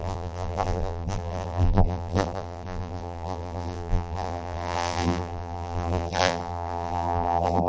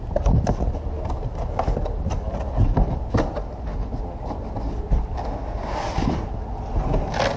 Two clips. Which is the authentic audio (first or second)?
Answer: second